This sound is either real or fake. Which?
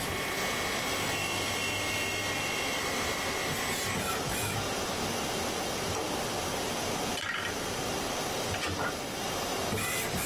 real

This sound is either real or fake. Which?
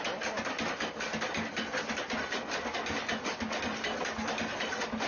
real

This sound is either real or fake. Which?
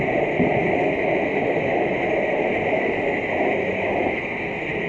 real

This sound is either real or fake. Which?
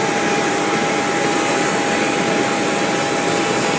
real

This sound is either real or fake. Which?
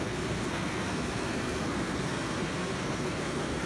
fake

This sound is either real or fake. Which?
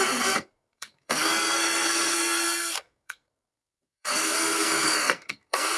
fake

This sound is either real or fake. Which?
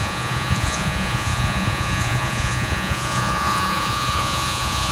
fake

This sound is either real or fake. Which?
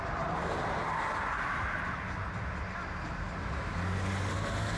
real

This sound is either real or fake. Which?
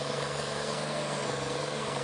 fake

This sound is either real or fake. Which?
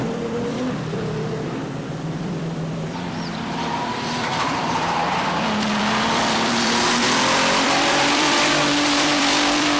fake